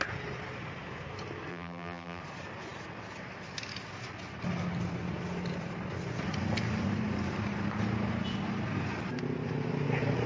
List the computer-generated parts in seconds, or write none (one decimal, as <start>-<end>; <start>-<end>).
1.5-2.2